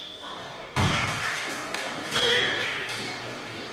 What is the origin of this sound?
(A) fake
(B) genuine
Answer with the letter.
A